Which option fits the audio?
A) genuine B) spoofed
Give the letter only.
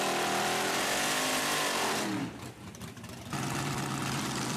B